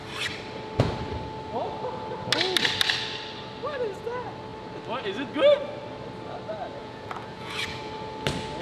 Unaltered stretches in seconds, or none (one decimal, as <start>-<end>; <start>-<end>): 0.0-6.8; 7.9-8.6